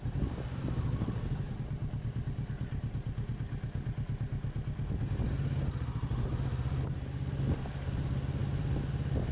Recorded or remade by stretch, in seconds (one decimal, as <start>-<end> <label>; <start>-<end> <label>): 0.0-9.3 recorded